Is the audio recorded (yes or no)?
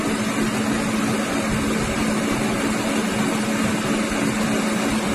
yes